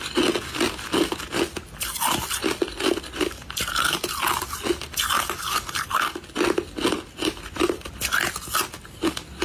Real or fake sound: real